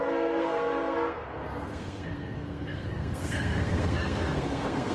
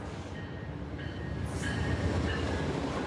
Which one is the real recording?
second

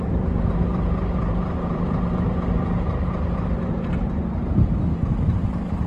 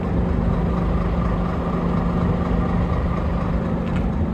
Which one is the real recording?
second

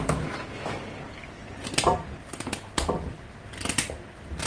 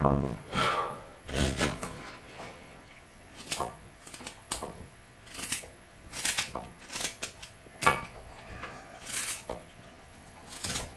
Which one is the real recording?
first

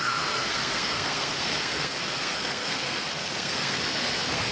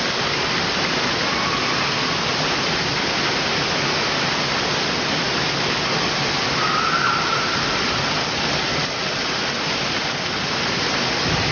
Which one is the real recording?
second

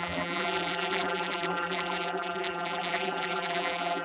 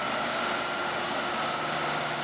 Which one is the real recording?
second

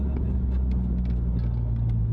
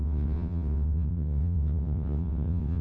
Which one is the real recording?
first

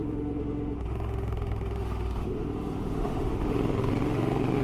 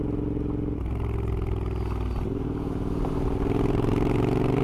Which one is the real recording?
second